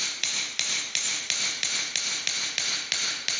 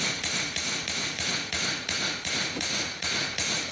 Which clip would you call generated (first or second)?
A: second